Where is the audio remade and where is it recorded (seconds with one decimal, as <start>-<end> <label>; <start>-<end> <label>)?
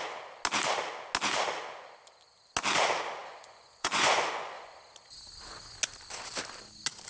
0.0-3.2 recorded; 3.2-4.7 remade; 4.7-7.1 recorded